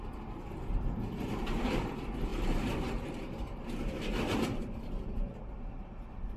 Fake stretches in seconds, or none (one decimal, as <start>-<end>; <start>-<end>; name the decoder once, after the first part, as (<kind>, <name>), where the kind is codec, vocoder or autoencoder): 0.0-6.4 (vocoder, BigVGAN v2)